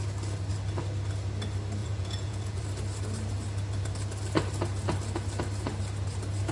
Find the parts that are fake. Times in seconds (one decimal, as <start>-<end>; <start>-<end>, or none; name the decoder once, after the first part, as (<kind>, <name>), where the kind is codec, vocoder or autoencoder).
1.8-2.6 (vocoder, Vocos)